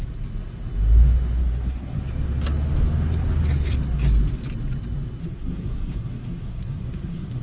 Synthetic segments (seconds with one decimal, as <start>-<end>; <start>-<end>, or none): 1.4-2.0; 5.2-7.4